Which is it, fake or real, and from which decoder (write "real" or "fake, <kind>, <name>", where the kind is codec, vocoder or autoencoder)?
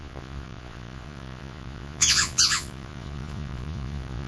fake, vocoder, Vocos